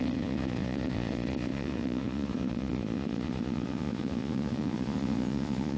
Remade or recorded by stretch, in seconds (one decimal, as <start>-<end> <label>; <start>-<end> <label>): 0.0-5.8 remade